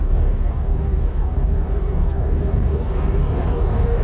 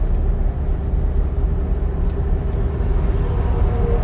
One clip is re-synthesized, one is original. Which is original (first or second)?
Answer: second